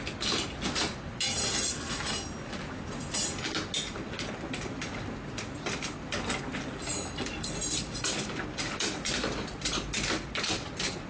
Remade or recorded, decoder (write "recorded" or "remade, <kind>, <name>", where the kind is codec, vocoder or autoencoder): recorded